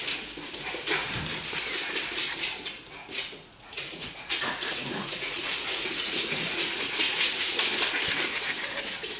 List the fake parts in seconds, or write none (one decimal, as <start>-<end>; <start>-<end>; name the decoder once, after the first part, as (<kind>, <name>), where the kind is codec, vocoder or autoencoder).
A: 3.0-7.7 (vocoder, Vocos)